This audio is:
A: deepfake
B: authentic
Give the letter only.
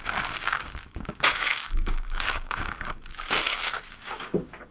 A